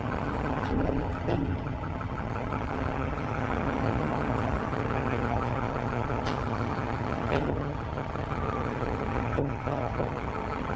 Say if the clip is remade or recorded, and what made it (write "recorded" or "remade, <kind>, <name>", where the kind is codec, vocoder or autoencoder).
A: remade, vocoder, HiFi-GAN